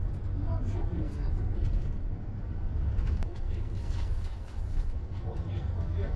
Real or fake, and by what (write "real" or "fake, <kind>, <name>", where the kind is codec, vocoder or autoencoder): fake, codec, SNAC